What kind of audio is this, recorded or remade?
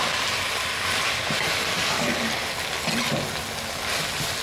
recorded